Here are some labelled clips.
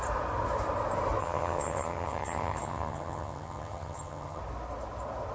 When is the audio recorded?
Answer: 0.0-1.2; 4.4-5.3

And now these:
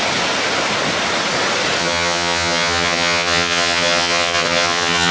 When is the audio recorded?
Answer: 0.0-1.8

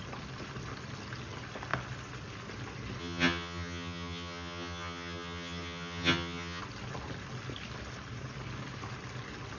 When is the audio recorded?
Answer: 0.0-3.0; 6.6-9.6

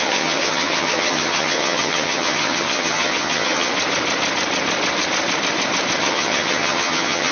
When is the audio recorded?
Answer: 3.7-6.0

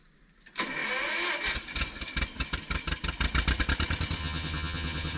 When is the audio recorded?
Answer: 0.0-4.2

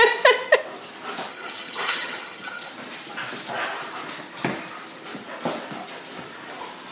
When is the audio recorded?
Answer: 0.0-1.3; 2.7-6.9